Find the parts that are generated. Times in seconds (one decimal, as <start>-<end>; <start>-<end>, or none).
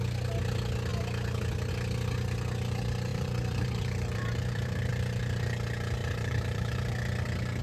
3.1-4.9; 6.0-6.9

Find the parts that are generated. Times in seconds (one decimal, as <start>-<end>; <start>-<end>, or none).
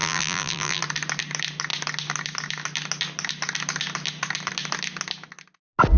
0.0-0.8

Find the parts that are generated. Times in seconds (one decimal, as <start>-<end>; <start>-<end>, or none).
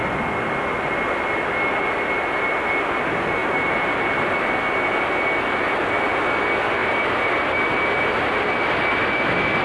3.4-4.3; 6.8-8.1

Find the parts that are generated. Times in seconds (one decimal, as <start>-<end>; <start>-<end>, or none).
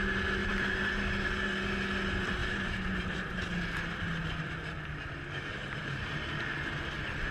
0.4-0.9; 2.4-3.0; 5.8-6.4